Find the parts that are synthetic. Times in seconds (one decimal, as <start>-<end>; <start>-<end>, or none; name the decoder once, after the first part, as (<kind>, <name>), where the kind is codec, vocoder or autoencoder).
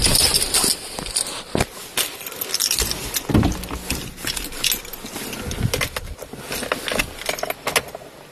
none